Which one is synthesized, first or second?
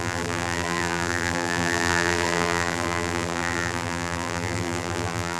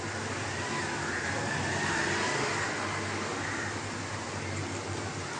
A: first